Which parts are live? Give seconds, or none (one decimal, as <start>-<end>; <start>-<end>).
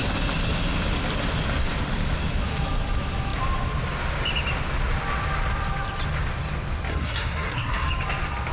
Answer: 0.0-6.9; 7.9-8.5